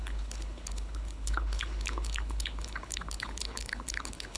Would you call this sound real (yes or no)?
no